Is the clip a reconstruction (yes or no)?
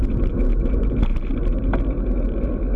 no